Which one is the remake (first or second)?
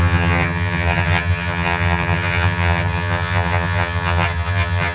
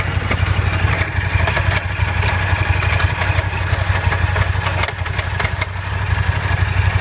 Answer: first